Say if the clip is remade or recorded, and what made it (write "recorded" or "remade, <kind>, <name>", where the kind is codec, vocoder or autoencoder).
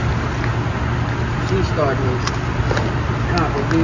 recorded